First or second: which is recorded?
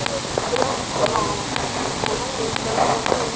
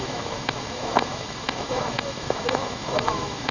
first